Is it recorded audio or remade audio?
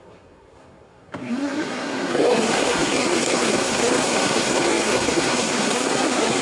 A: remade